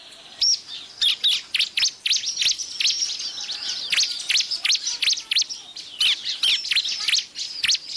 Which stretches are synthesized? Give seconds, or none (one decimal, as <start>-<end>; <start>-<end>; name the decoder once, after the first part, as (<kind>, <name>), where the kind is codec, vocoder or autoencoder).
none